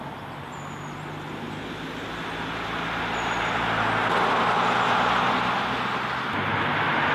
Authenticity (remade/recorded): recorded